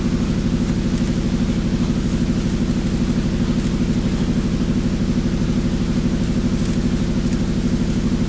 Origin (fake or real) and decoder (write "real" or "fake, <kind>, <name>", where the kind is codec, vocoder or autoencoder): real